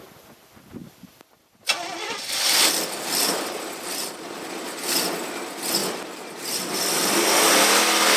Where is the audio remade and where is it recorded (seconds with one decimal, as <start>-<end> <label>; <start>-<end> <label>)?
0.0-0.8 recorded; 0.8-5.1 remade; 5.1-5.8 recorded; 5.8-7.1 remade; 7.1-8.2 recorded